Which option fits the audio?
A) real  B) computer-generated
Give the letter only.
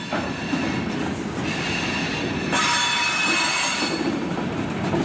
A